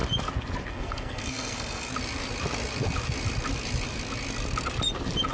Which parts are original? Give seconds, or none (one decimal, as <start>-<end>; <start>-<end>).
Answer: 0.0-0.7; 1.9-5.3